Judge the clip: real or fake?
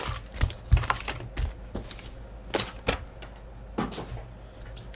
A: real